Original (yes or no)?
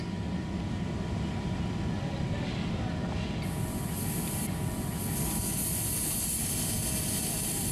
yes